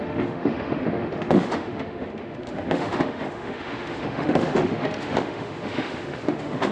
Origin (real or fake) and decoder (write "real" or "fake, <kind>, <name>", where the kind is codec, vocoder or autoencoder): fake, autoencoder, DAC-VAE